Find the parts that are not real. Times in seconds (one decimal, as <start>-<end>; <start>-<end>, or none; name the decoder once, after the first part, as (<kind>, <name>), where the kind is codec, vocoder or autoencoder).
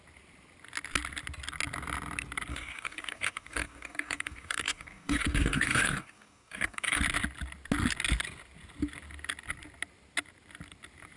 2.5-7.0 (codec, DAC)